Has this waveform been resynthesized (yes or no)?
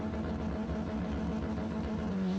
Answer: no